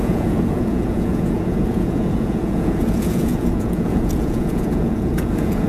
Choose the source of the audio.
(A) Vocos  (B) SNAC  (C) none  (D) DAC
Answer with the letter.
A